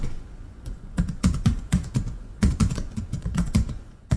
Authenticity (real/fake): fake